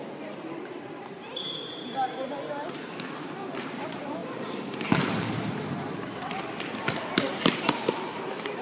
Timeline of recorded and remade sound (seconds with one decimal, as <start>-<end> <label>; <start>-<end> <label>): 0.0-6.2 remade; 6.2-7.2 recorded; 7.2-8.6 remade